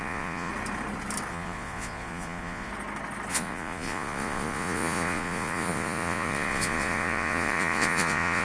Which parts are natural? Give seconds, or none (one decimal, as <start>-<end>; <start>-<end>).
0.5-1.3; 2.7-3.3